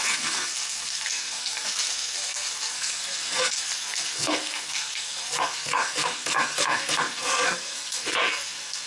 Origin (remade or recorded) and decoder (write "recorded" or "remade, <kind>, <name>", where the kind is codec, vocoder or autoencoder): remade, codec, SNAC